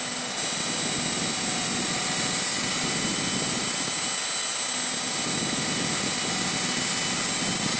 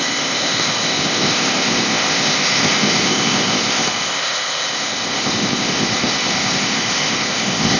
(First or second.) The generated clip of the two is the second